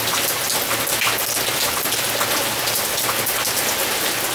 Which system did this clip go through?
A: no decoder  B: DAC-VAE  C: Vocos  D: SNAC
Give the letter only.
A